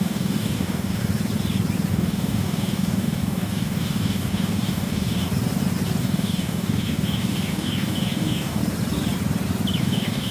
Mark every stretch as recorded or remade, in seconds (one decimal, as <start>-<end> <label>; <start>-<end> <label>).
0.0-1.1 remade; 1.1-1.9 recorded; 1.9-5.3 remade; 5.3-6.0 recorded; 6.0-8.6 remade; 8.6-9.8 recorded; 9.8-10.3 remade